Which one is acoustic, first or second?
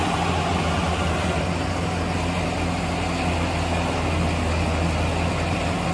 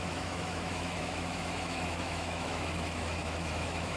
first